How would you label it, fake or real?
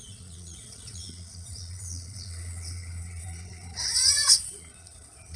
fake